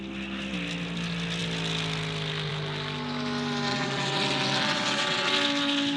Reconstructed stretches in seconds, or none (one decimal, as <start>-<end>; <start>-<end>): 3.7-5.3